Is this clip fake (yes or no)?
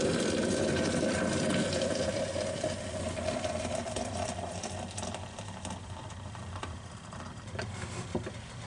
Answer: yes